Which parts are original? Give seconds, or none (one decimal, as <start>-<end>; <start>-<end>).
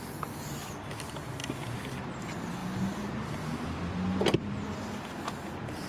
0.0-5.9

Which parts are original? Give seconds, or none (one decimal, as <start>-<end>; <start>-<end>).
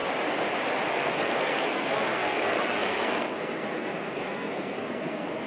0.0-0.9